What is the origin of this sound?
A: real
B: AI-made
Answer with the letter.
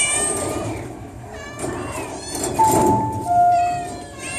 B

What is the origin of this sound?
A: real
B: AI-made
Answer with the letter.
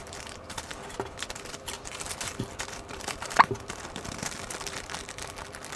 B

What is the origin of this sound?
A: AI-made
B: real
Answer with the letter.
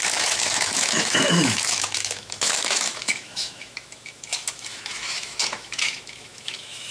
A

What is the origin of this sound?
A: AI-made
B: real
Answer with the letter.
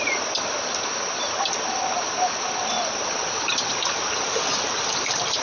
A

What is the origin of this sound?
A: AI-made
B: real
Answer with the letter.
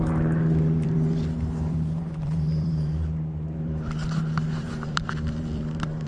A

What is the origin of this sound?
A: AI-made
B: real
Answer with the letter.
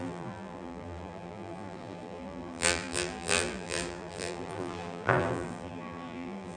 A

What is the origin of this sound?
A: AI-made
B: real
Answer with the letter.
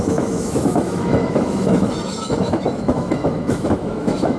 A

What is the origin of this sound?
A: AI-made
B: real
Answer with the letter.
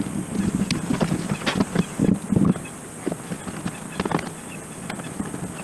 B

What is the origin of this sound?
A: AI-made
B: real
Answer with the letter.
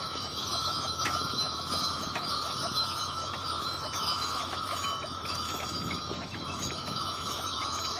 A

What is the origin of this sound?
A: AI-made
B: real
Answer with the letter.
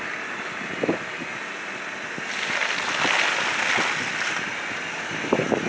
B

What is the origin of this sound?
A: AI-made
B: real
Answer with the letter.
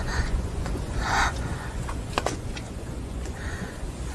A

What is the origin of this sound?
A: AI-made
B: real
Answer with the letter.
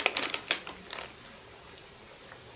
B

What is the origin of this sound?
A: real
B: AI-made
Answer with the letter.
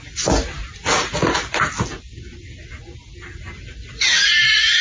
A